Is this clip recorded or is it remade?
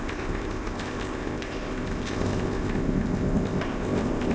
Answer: remade